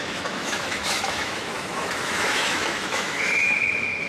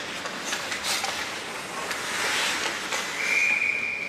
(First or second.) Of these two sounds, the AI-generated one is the first